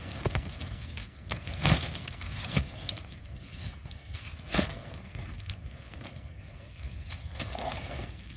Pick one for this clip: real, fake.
fake